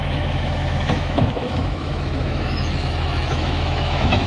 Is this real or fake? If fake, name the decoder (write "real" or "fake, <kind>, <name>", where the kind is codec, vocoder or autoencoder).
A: fake, autoencoder, DAC-VAE